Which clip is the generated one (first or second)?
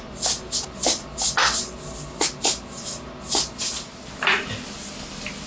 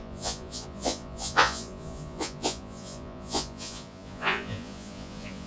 second